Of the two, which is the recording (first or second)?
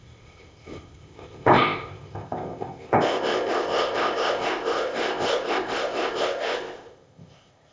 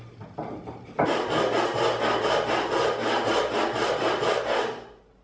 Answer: second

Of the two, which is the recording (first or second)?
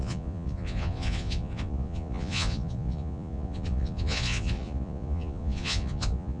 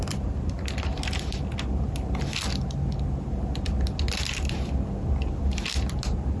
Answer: second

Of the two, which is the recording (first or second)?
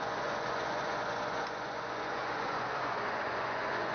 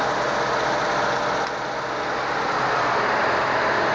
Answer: second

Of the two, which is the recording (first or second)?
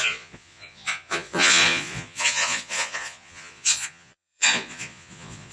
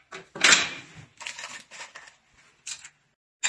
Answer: second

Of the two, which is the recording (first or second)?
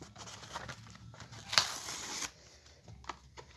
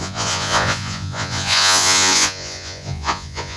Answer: first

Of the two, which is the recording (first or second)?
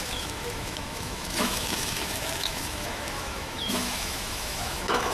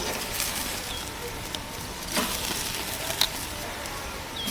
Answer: second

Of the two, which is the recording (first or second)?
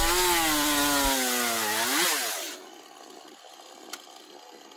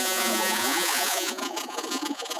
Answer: first